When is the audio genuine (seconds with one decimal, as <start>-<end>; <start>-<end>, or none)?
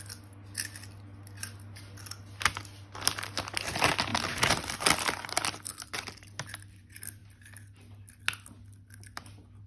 0.0-2.6; 3.3-9.7